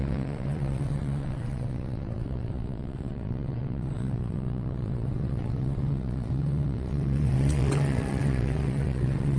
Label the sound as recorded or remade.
remade